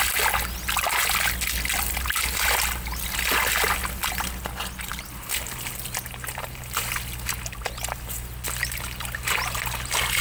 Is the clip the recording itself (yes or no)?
yes